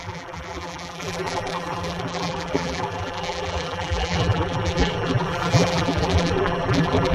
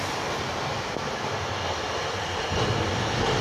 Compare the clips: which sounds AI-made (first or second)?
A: first